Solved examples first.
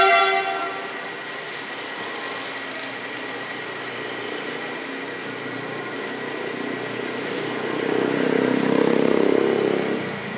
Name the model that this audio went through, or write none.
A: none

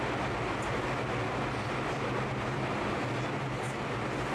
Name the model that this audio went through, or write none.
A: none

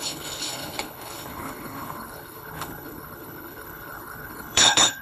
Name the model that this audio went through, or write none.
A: codec, HILCodec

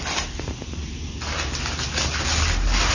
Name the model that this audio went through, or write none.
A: none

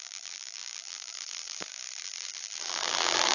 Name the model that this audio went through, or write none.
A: vocoder, BigVGAN v2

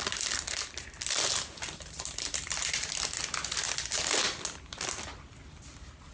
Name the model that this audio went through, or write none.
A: none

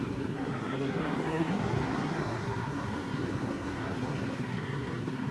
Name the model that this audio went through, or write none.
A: codec, SNAC